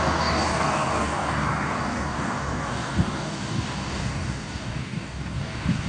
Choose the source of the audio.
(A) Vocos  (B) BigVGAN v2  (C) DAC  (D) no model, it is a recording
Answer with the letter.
C